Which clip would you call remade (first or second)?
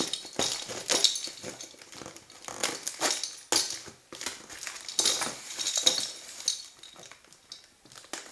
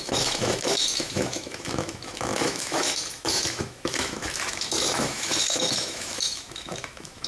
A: second